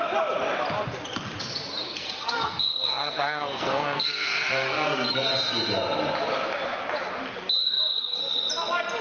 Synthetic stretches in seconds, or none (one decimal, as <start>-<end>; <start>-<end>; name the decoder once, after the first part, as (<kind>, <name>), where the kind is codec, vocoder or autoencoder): 1.9-5.3 (codec, SNAC); 7.6-8.5